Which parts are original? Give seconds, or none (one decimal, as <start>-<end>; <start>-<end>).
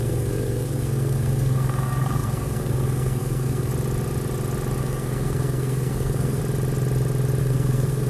3.7-4.8; 6.4-7.4